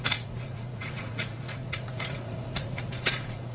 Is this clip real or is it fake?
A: fake